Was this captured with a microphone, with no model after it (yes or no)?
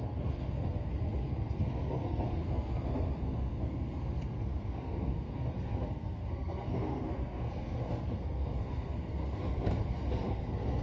no